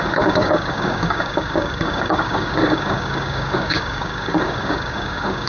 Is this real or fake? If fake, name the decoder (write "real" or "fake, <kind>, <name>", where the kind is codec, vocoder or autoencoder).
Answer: fake, codec, DAC